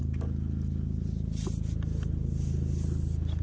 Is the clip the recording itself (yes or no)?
yes